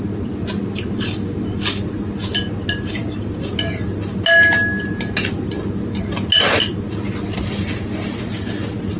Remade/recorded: recorded